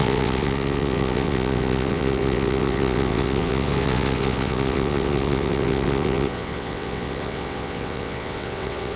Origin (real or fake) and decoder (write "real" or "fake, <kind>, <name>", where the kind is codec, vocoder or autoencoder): fake, vocoder, WaveNeXt